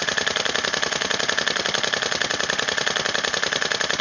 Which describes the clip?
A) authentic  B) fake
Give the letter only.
A